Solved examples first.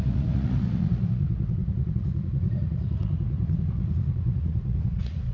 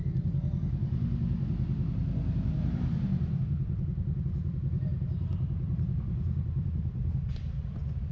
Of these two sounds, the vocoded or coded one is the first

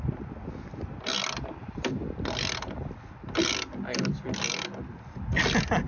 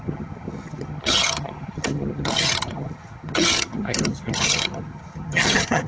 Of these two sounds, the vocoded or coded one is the second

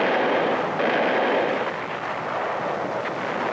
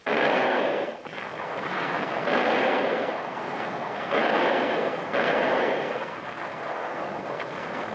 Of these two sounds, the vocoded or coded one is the second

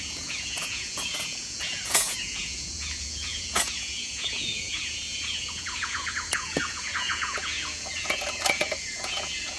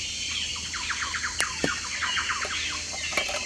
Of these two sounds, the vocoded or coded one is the first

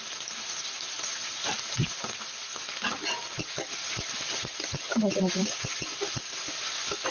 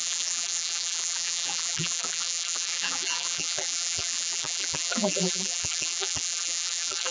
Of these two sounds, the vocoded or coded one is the second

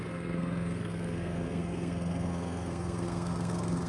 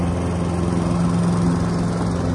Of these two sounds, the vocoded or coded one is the first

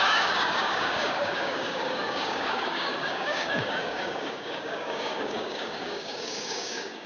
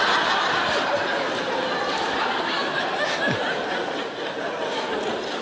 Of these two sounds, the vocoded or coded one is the first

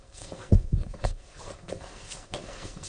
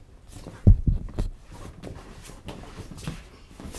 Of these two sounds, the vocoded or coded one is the first